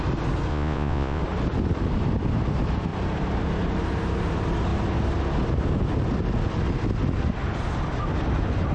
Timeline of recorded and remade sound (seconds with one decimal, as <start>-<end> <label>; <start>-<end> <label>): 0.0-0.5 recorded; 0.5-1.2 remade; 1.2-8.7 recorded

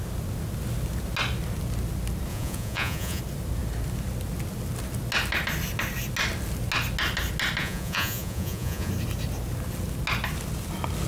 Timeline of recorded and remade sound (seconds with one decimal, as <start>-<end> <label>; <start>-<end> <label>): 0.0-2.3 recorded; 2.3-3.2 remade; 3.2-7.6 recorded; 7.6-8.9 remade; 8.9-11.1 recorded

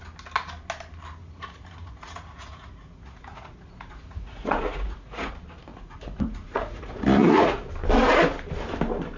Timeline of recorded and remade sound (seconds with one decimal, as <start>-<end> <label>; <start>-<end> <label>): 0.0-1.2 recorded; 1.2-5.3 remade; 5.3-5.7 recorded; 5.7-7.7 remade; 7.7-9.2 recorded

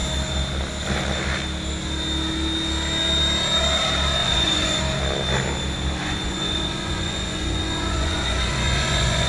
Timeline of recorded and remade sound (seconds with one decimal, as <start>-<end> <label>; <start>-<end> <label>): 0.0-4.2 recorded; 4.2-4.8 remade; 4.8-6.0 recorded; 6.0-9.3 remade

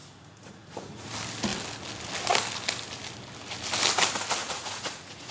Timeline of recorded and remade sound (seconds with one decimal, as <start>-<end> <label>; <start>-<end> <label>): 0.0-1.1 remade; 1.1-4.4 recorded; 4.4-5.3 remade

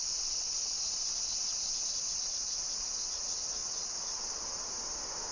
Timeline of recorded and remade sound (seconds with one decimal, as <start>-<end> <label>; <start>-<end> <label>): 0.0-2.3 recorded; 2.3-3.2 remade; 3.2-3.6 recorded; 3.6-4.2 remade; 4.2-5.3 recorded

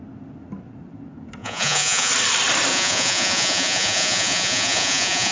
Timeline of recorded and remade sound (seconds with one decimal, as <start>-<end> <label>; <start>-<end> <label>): 0.0-1.4 recorded; 1.4-2.1 remade; 2.1-2.7 recorded; 2.7-5.3 remade